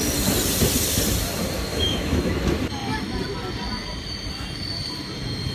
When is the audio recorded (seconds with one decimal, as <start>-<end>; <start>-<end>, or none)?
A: 0.0-1.7; 2.3-5.5